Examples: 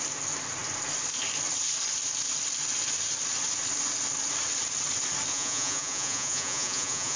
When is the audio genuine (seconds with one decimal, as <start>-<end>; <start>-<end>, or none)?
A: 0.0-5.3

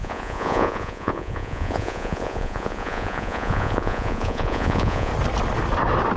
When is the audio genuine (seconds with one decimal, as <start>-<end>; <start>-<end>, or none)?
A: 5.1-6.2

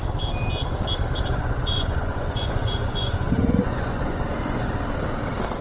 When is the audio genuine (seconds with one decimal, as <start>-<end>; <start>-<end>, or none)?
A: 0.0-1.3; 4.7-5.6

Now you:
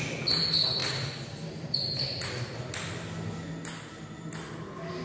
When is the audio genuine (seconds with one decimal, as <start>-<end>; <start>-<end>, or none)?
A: 0.0-5.0